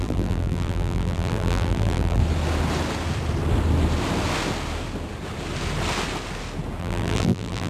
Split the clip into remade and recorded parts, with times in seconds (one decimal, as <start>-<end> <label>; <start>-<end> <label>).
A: 0.0-2.2 remade; 2.2-6.8 recorded; 6.8-7.7 remade